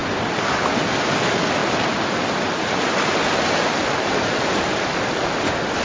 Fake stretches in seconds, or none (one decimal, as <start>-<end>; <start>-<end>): none